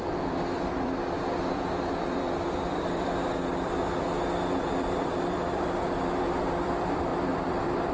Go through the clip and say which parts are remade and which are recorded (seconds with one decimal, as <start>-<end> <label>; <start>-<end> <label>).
0.0-1.0 remade; 1.0-2.0 recorded; 2.0-3.2 remade; 3.2-4.5 recorded; 4.5-7.9 remade